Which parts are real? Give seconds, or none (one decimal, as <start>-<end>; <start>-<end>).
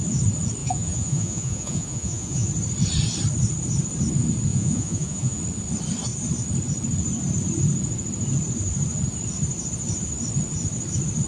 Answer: 0.0-0.6; 2.5-4.5; 5.4-11.3